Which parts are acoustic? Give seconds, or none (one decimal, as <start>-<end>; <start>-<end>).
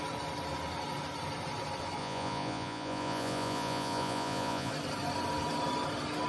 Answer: 0.0-2.0; 4.7-6.3